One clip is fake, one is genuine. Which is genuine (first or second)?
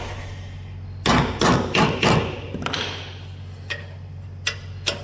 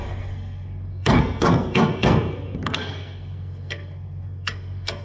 first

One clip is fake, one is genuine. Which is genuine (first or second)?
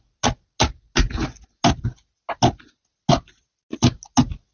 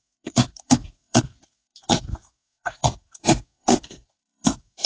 first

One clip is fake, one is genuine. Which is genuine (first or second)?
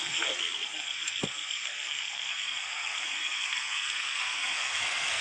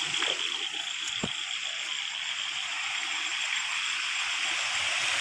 second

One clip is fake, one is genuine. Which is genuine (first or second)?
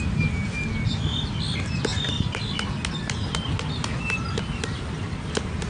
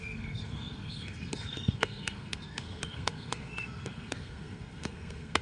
first